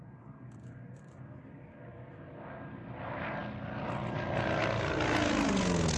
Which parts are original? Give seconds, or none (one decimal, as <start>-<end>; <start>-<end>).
0.0-6.0